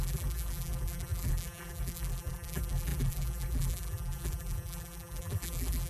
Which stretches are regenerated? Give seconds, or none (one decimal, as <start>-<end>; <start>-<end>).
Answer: 0.0-5.9